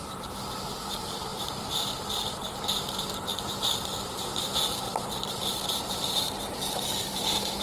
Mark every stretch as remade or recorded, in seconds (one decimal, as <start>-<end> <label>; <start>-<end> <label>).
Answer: 0.0-3.3 remade; 3.3-3.9 recorded; 3.9-7.6 remade